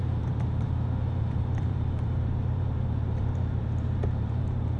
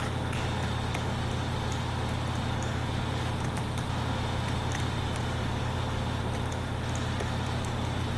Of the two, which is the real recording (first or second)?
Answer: second